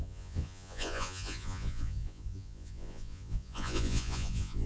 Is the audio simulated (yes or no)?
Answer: yes